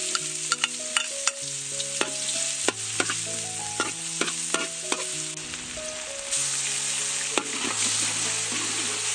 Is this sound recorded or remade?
recorded